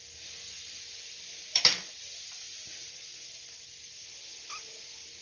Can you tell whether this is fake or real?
fake